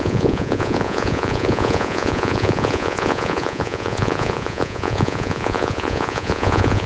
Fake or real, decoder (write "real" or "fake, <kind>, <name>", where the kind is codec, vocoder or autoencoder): fake, vocoder, Vocos